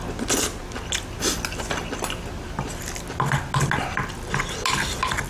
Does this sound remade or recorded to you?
recorded